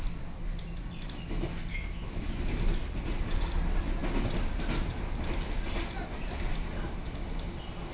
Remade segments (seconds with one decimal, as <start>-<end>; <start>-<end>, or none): 1.7-2.4